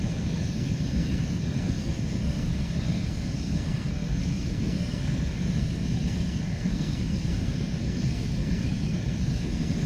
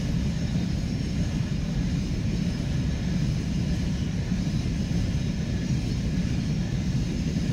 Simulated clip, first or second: first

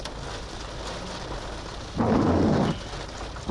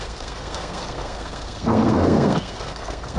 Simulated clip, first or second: second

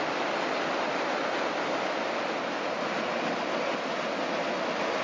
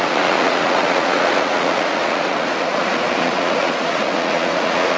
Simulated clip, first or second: second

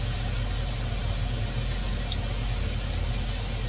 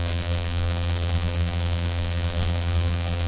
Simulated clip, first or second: second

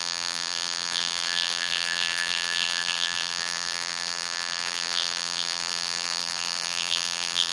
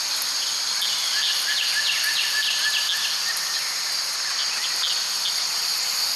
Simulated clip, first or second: first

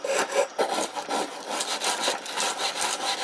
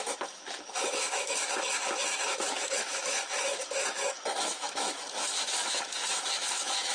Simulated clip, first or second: second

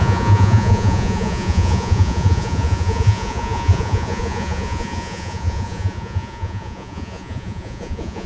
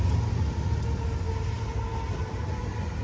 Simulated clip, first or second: first